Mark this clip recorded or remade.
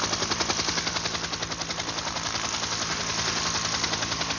recorded